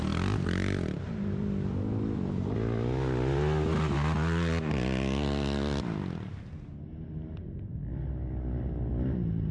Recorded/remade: recorded